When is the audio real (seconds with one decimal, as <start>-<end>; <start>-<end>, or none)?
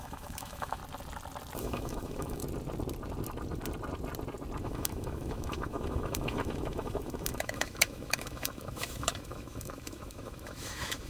0.8-1.6; 2.4-4.6